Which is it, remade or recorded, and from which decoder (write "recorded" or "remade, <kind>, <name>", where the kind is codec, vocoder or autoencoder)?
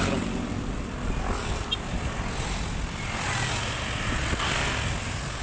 recorded